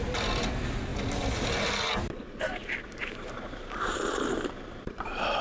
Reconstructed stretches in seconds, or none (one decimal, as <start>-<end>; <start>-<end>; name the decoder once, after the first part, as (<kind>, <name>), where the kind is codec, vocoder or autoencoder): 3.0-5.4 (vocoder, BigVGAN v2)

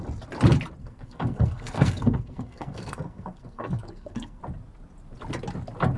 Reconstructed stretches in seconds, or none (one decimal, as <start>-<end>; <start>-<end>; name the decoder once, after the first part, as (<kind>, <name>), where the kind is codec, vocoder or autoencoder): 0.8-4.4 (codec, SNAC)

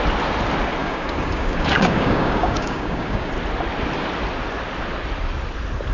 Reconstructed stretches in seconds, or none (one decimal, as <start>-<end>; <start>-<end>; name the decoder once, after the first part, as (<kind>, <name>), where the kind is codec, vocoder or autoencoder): 0.8-3.3 (codec, DAC)